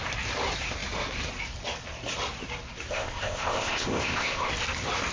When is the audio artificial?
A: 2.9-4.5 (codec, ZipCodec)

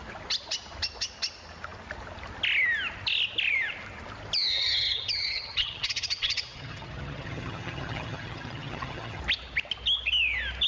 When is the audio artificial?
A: 4.5-9.2 (vocoder, HiFi-GAN)

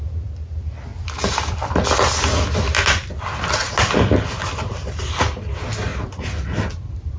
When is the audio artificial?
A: none